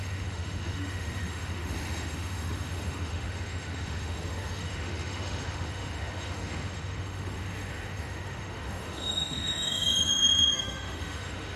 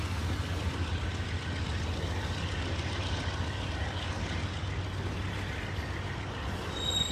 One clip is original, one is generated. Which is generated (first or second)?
first